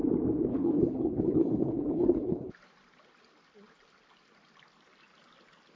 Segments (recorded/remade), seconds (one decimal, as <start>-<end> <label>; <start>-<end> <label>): 0.0-0.5 recorded; 0.5-2.5 remade; 2.5-5.8 recorded